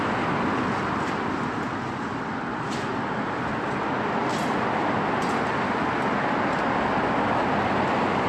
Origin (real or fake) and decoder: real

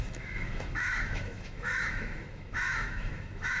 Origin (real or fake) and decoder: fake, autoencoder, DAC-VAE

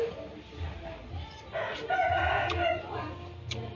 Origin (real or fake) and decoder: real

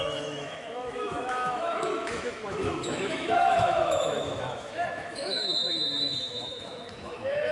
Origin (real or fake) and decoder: fake, autoencoder, DAC-VAE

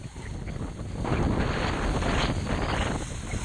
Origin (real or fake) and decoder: real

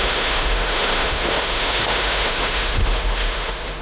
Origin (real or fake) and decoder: fake, autoencoder, DAC-VAE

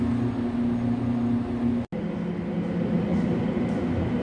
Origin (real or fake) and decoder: real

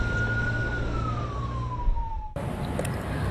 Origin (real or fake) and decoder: real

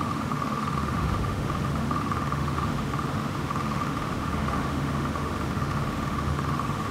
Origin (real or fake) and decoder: fake, autoencoder, DAC-VAE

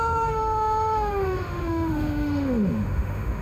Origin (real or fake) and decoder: fake, autoencoder, DAC-VAE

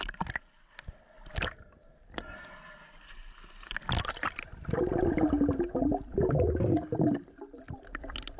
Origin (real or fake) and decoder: real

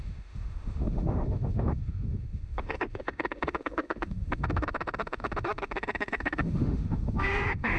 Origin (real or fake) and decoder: fake, autoencoder, DAC-VAE